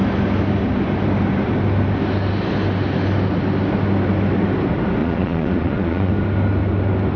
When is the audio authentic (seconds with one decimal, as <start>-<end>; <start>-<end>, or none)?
0.0-5.0; 6.1-7.2